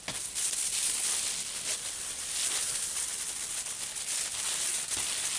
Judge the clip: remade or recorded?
recorded